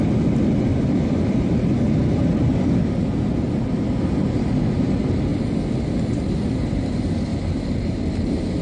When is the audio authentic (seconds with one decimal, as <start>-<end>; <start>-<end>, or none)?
0.0-0.7; 1.8-5.3; 6.7-7.3; 8.1-8.6